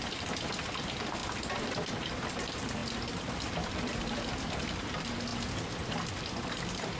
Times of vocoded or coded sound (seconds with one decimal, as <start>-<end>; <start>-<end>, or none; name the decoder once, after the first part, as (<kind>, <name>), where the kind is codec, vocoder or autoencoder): 0.0-1.2 (vocoder, BigVGAN v2); 2.3-5.3; 6.1-7.0